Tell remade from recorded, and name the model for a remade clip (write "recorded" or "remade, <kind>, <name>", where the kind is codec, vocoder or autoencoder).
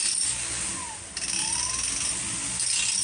recorded